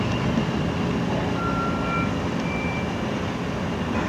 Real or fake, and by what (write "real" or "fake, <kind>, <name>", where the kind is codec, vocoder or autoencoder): real